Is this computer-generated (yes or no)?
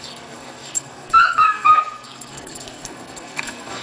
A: yes